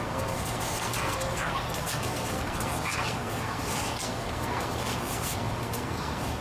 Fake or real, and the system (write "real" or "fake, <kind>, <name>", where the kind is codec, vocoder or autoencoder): fake, codec, SNAC